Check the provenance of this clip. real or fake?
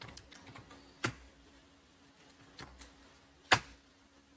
real